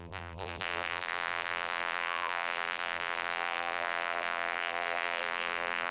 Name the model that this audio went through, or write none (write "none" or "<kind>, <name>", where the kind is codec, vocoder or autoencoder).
vocoder, BigVGAN v2